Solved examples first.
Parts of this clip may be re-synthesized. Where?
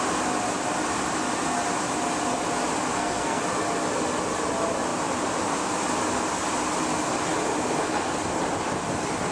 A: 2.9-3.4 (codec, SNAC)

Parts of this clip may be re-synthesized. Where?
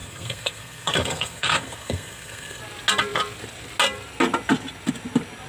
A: 0.0-2.6 (codec, SNAC)